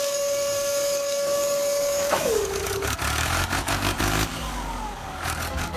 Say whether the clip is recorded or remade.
remade